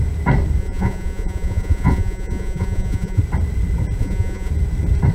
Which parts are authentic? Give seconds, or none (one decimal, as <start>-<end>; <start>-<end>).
0.0-0.6; 3.2-4.0; 4.5-5.1